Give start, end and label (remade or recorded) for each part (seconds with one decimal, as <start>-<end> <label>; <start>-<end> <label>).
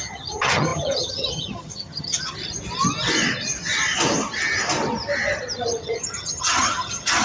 0.0-2.4 remade; 2.4-5.8 recorded; 5.8-7.2 remade